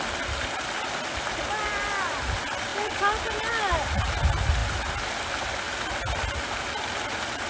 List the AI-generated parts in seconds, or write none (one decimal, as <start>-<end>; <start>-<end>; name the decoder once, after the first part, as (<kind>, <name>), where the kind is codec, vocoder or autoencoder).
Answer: none